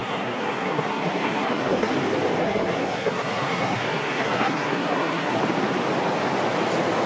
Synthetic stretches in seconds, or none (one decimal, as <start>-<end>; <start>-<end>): 0.0-1.9; 2.4-5.4